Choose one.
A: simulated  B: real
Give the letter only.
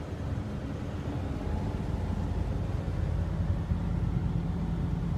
B